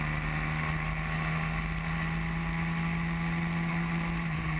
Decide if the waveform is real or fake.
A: real